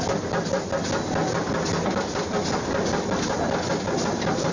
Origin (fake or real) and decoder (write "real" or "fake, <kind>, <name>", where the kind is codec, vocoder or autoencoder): real